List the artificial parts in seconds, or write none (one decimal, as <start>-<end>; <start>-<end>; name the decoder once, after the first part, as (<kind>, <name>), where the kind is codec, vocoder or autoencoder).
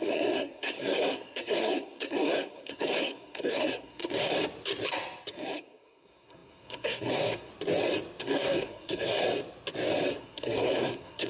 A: 0.0-4.3 (codec, SNAC); 5.3-7.5; 8.2-9.2; 10.2-11.3